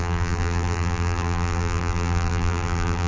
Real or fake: fake